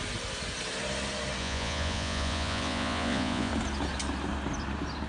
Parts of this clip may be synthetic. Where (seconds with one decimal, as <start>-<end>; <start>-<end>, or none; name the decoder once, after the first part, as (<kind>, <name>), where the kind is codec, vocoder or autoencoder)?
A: 1.4-3.5 (vocoder, Vocos)